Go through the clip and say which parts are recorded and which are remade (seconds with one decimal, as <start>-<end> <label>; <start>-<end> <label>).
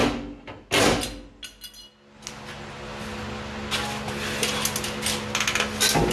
0.0-6.1 recorded